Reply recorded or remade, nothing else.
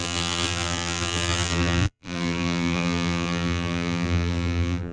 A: remade